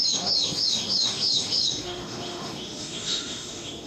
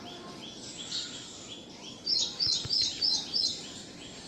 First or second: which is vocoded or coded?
first